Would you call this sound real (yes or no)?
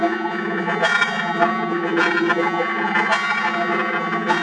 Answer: no